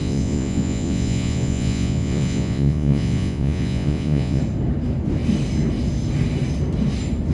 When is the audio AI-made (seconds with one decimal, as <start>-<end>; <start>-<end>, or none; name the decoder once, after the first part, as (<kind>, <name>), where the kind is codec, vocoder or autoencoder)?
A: 0.0-4.4 (vocoder, Vocos)